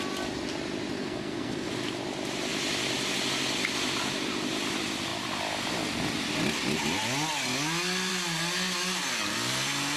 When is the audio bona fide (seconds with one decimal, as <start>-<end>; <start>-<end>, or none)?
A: 0.0-1.0; 1.7-10.0